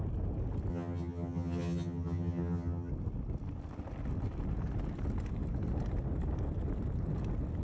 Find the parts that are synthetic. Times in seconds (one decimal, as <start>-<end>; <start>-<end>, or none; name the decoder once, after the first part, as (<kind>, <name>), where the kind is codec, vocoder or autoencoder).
0.7-2.9 (vocoder, HiFi-GAN)